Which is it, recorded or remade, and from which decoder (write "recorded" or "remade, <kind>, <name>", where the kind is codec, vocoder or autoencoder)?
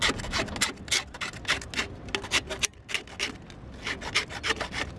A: recorded